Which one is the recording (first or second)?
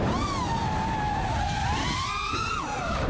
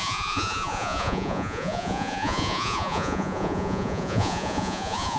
first